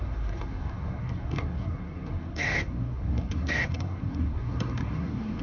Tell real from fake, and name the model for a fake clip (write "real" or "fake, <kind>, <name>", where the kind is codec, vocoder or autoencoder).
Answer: fake, codec, SNAC